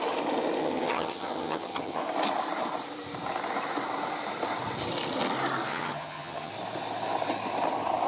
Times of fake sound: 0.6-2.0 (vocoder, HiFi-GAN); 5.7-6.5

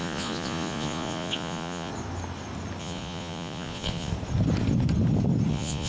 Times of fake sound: 0.0-1.9 (vocoder, Vocos); 2.8-4.1; 5.5-5.9

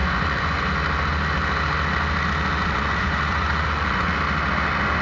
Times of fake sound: 0.0-0.6 (vocoder, Vocos); 2.6-4.2